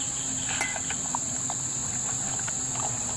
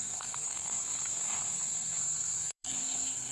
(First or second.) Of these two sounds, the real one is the first